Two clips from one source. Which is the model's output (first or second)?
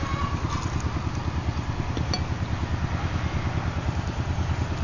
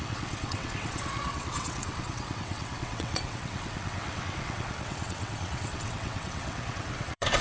second